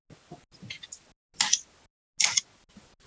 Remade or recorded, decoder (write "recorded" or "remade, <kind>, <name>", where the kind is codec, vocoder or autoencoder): recorded